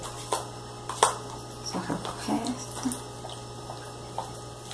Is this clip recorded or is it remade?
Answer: recorded